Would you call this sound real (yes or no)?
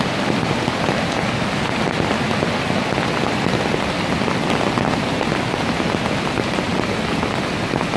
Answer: yes